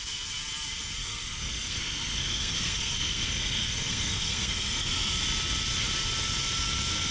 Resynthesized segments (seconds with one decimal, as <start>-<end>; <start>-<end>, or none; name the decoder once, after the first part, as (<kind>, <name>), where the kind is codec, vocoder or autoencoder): 1.0-5.2 (codec, SNAC)